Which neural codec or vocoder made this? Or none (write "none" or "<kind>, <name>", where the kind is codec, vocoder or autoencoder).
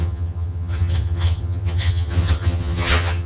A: vocoder, HiFi-GAN